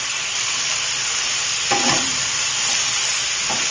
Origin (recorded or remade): recorded